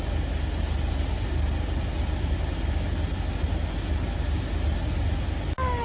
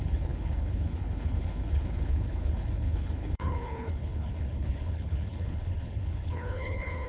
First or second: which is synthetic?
second